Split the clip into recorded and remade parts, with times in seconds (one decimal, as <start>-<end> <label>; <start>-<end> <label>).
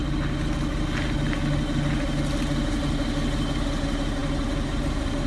0.0-5.3 recorded